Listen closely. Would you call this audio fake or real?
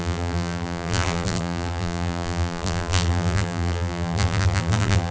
fake